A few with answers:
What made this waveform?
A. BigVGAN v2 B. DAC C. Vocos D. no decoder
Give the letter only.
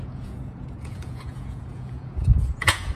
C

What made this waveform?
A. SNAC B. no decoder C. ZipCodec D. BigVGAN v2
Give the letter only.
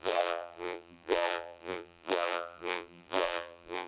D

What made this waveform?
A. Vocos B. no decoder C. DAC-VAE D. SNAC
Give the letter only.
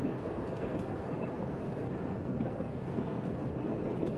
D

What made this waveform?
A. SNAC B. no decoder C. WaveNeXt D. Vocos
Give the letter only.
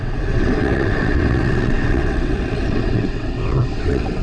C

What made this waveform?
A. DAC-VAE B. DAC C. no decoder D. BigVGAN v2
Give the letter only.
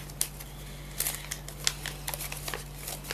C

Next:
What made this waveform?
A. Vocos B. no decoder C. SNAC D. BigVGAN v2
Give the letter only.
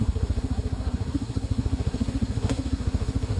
C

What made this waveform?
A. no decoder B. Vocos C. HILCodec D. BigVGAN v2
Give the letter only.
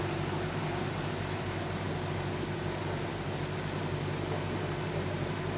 A